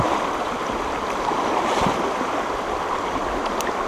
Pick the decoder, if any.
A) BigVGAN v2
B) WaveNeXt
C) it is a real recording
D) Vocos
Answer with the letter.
C